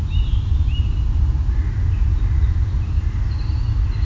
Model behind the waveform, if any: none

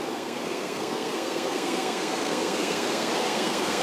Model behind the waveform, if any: codec, SNAC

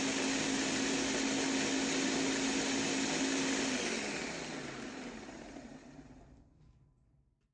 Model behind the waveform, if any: none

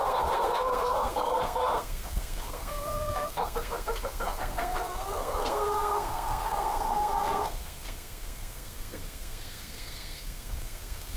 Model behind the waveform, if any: codec, SNAC